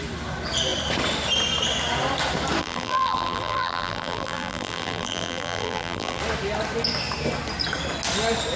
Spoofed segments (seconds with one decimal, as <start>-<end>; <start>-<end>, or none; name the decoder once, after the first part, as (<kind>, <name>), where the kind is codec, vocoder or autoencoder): 2.6-6.2 (vocoder, BigVGAN v2)

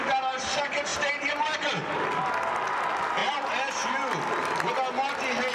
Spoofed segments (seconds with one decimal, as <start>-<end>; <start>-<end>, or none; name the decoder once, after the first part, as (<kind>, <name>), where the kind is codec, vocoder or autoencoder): none

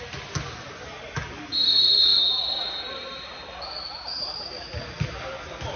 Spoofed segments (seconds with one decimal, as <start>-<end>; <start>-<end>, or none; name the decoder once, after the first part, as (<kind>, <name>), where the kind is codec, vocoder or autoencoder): none

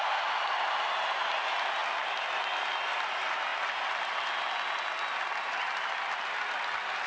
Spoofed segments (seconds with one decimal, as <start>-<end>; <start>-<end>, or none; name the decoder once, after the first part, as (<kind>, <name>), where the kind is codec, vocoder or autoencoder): none